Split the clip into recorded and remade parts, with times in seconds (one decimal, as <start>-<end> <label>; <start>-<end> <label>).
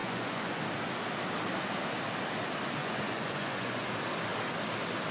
0.0-0.6 remade; 0.6-2.8 recorded; 2.8-3.9 remade; 3.9-5.1 recorded